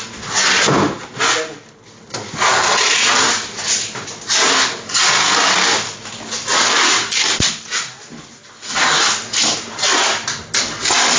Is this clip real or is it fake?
real